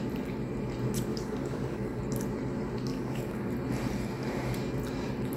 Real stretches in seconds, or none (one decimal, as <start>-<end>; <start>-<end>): 0.0-1.1; 2.0-2.9; 3.5-5.4